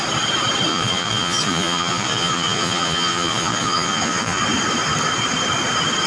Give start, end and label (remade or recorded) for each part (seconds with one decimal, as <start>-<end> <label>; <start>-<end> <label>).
0.0-0.7 recorded; 0.7-4.4 remade; 4.4-6.1 recorded